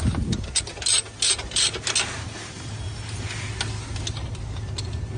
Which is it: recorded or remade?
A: recorded